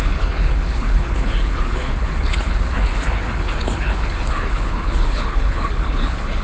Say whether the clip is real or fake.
fake